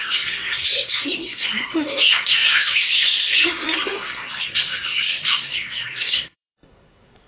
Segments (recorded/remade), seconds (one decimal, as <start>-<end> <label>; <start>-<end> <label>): 0.0-7.3 remade